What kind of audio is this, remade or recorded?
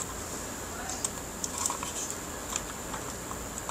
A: recorded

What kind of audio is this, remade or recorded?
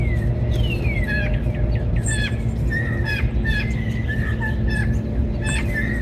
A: recorded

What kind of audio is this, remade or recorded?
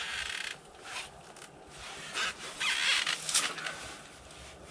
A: recorded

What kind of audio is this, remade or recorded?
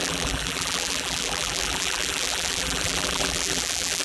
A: remade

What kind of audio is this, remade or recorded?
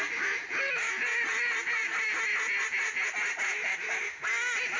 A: recorded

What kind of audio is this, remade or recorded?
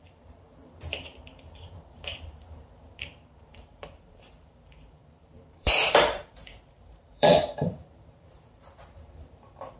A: remade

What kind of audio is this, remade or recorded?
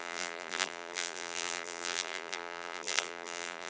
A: remade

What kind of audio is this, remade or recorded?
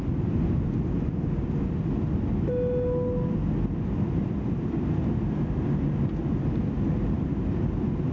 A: recorded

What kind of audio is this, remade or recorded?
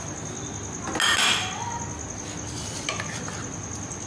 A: recorded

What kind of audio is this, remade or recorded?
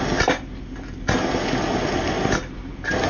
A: recorded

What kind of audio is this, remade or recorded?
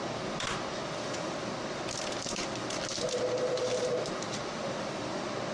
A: remade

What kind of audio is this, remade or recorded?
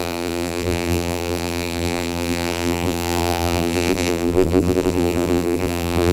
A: remade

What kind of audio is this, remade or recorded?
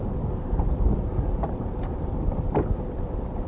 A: remade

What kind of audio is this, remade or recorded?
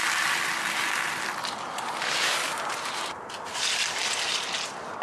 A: recorded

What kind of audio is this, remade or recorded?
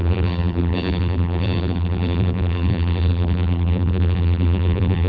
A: remade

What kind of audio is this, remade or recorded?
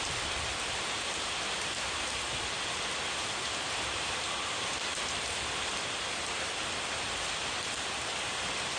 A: remade